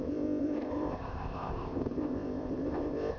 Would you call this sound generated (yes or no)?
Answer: yes